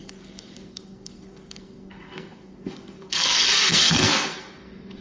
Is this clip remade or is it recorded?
remade